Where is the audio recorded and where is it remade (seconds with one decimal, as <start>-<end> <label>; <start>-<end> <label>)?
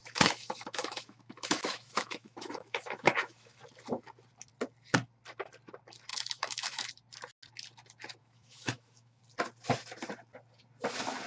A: 0.0-3.6 remade; 3.6-6.1 recorded; 6.1-6.9 remade; 6.9-8.2 recorded; 8.2-9.2 remade; 9.2-11.3 recorded